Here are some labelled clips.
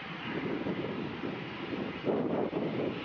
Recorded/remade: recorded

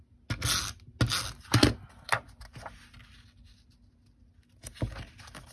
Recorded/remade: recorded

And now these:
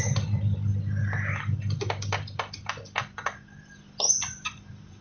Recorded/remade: recorded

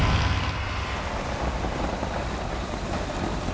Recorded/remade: recorded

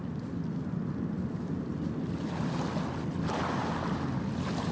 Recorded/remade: recorded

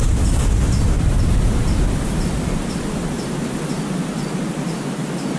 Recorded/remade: recorded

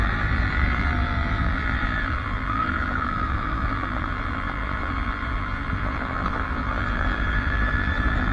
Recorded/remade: remade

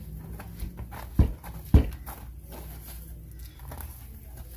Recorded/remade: recorded